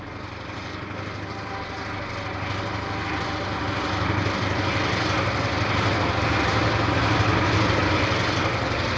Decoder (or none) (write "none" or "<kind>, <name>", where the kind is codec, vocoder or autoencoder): none